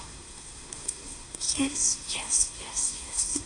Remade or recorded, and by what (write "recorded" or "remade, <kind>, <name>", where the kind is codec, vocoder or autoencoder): remade, codec, SNAC